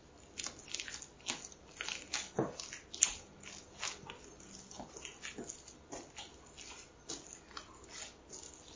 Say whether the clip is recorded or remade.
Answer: recorded